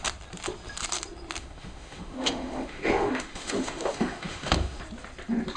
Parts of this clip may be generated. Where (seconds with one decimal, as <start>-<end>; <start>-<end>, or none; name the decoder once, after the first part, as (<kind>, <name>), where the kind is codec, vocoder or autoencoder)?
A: 1.4-4.8 (autoencoder, DAC-VAE)